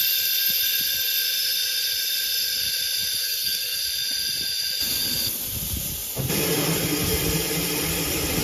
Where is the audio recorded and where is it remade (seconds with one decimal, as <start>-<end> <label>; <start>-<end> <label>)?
0.0-3.2 recorded; 3.2-3.8 remade; 3.8-8.4 recorded